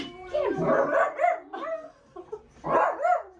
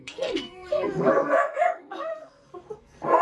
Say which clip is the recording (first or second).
first